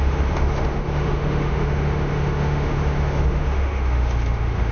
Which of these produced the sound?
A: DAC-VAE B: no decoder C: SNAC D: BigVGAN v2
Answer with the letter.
A